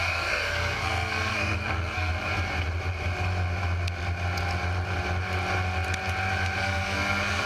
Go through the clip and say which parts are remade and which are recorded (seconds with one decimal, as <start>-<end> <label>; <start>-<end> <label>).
0.0-2.1 remade; 2.1-6.6 recorded; 6.6-7.5 remade